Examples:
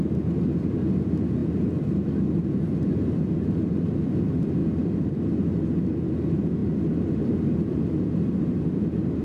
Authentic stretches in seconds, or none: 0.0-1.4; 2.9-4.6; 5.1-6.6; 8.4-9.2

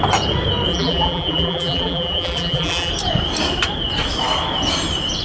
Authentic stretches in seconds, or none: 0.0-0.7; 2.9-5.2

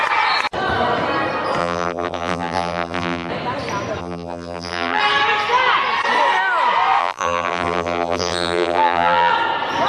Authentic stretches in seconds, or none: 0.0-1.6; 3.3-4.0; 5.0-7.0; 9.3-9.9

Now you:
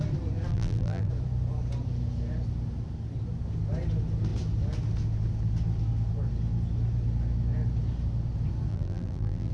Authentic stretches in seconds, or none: 0.0-0.5; 1.1-8.7